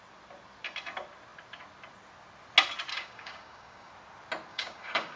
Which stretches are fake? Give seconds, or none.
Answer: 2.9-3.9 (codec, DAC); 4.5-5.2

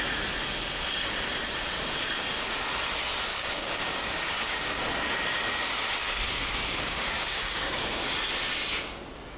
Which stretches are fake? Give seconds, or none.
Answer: 3.3-4.8 (codec, DAC); 6.0-8.0

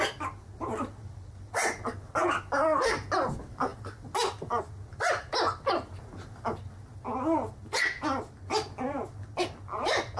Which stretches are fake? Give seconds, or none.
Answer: none

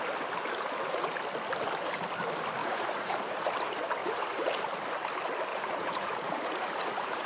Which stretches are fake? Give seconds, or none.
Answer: 2.6-3.5 (vocoder, Vocos); 4.0-4.6; 5.5-7.3

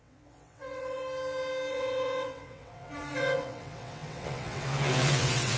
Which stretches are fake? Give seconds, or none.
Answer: 0.0-1.0 (vocoder, WaveNeXt); 1.7-5.6

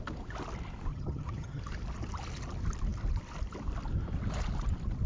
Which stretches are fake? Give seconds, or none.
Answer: 0.9-1.6 (vocoder, HiFi-GAN)